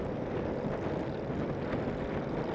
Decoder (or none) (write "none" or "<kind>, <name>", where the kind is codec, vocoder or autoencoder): none